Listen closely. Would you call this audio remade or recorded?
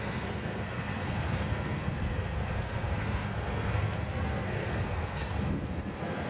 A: remade